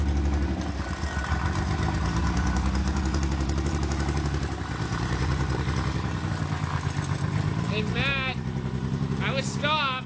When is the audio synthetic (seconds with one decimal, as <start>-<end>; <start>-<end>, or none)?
2.8-6.3